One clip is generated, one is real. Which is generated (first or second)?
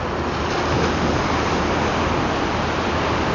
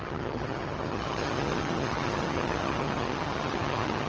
second